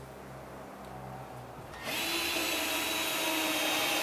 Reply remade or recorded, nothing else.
recorded